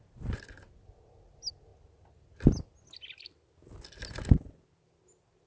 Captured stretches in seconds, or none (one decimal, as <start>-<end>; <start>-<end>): 0.0-5.5